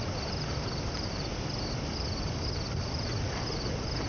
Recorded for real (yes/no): yes